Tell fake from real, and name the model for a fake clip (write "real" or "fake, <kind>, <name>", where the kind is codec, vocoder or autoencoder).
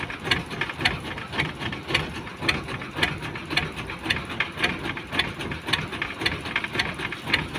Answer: real